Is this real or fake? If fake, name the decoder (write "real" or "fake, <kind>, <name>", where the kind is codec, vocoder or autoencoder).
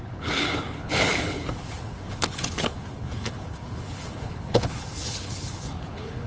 fake, codec, HILCodec